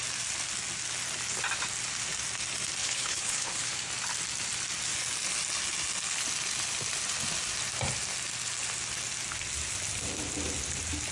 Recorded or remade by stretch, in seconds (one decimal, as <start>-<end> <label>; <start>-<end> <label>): 0.0-2.8 recorded; 2.8-3.9 remade; 3.9-11.1 recorded